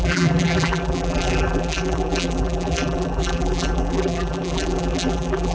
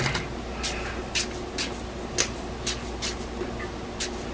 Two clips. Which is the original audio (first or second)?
second